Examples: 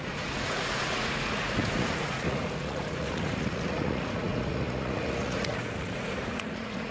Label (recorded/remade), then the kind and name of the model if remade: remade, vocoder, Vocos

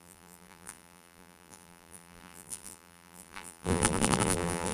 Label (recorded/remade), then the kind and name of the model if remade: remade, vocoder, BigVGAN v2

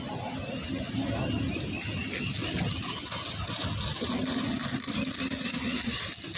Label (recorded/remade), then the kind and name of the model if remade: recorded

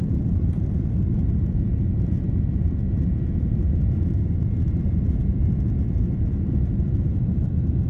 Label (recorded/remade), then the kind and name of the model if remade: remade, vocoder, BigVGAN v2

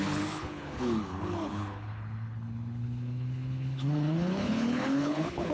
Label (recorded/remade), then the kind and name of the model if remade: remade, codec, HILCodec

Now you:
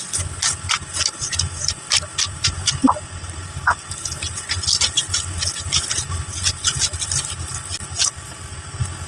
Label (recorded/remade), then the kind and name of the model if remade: recorded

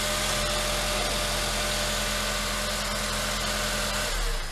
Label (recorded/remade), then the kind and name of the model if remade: recorded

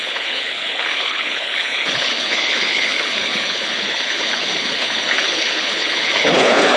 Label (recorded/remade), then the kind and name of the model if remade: remade, codec, HILCodec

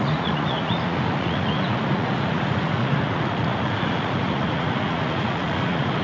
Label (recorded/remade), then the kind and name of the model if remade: remade, vocoder, Vocos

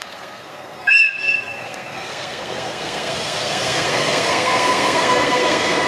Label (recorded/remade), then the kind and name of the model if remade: remade, codec, SNAC